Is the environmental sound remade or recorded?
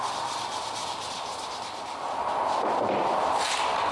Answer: recorded